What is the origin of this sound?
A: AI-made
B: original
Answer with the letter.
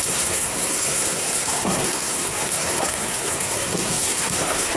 A